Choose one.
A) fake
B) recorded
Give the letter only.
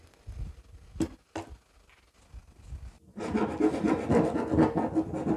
B